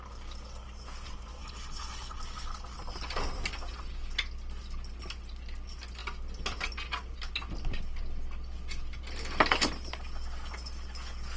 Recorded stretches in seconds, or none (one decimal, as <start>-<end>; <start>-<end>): 0.0-1.4; 2.2-11.4